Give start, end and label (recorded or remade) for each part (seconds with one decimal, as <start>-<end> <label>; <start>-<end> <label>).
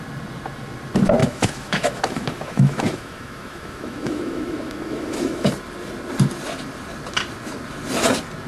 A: 0.0-1.2 recorded; 1.2-5.5 remade; 5.5-8.5 recorded